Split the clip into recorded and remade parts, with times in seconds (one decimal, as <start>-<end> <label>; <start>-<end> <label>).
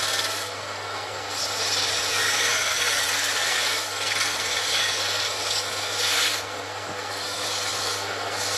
0.0-1.4 remade; 1.4-2.1 recorded; 2.1-8.6 remade